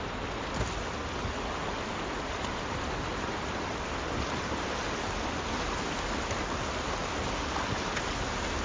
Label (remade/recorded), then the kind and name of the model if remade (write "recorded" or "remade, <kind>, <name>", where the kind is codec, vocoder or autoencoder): recorded